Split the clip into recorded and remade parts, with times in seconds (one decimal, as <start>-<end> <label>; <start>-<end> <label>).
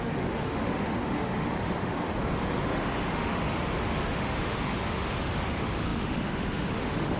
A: 0.0-7.2 remade